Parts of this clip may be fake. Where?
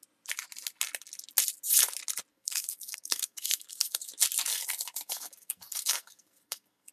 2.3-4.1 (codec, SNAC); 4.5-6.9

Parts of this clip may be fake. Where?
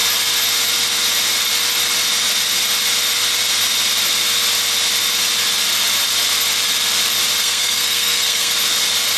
7.4-8.5 (codec, SNAC)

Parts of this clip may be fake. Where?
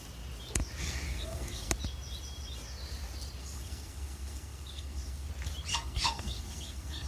0.8-1.7 (codec, SNAC); 3.4-5.3; 5.7-7.1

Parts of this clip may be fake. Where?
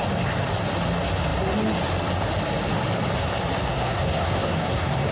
3.7-5.1 (codec, SNAC)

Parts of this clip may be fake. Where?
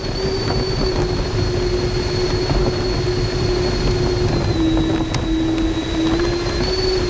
none